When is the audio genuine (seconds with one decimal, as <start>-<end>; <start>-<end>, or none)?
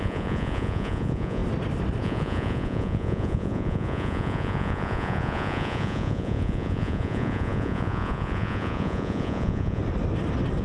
1.4-2.0; 9.8-10.6